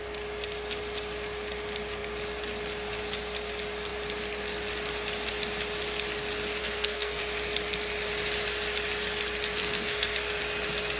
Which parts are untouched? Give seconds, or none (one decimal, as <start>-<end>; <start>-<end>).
0.0-6.6; 7.2-9.6; 10.4-11.0